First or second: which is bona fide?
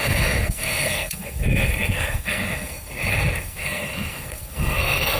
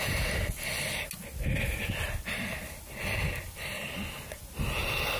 second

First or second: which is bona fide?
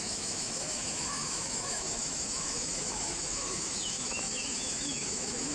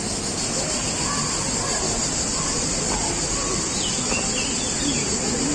second